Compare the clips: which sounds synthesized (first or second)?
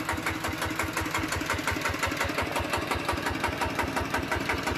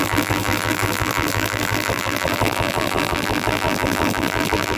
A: second